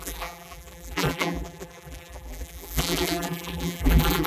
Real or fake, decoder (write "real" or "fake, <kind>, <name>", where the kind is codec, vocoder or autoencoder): fake, vocoder, BigVGAN v2